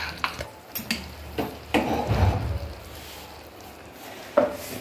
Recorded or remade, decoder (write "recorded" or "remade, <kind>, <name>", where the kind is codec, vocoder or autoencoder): recorded